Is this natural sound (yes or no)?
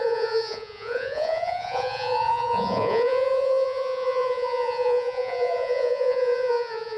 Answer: no